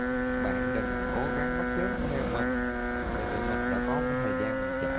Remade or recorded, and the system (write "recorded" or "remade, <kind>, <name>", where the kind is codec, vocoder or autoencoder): recorded